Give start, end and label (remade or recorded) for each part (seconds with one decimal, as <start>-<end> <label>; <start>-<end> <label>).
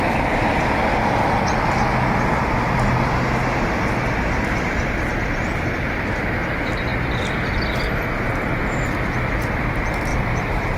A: 0.0-10.1 recorded; 10.1-10.8 remade